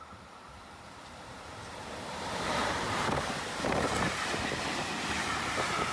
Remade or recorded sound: remade